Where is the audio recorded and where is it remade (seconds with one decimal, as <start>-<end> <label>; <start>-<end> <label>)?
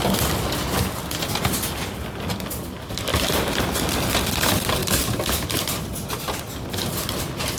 0.0-3.1 recorded; 3.1-3.6 remade; 3.6-4.8 recorded; 4.8-6.4 remade; 6.4-7.6 recorded